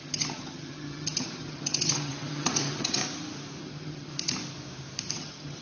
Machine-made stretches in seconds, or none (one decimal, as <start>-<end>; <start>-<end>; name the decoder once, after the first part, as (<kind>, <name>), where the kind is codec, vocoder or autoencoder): 0.0-3.0 (vocoder, HiFi-GAN); 3.6-4.1; 5.1-5.6

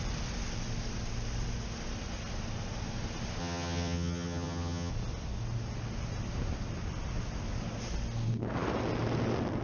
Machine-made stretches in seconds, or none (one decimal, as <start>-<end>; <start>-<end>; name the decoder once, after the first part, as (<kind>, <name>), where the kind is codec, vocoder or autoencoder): 3.4-4.9 (vocoder, HiFi-GAN)

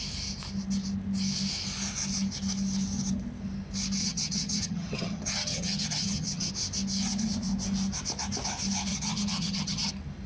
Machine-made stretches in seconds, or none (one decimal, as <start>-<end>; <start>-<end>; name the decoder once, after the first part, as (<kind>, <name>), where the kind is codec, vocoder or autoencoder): 4.0-6.5 (vocoder, HiFi-GAN); 8.9-9.9